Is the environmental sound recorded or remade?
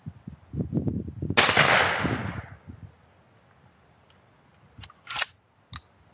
recorded